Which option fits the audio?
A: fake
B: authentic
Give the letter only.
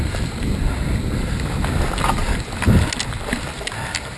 B